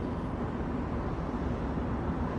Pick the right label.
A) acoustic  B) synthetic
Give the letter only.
A